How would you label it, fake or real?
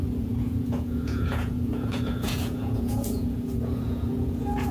fake